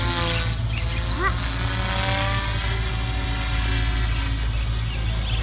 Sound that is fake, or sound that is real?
real